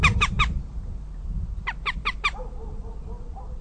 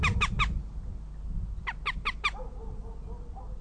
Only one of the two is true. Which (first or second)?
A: second